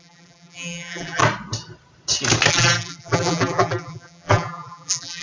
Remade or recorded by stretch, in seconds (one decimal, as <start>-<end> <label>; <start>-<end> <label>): 0.0-1.2 remade; 1.2-2.5 recorded; 2.5-5.2 remade